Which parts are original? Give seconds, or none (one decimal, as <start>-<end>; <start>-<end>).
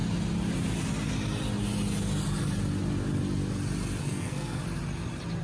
0.0-4.0; 4.6-5.4